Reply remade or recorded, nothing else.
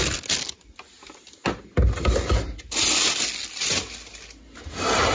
recorded